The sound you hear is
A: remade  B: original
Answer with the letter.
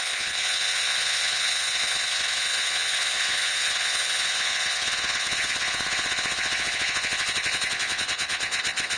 A